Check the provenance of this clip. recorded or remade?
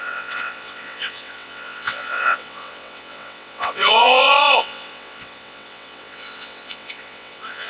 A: remade